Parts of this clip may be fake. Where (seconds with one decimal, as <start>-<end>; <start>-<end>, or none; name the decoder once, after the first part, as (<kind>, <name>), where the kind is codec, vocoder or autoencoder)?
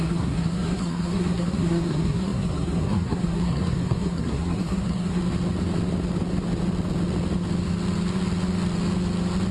0.0-5.2 (codec, SNAC)